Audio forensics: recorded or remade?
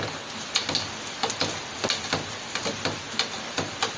recorded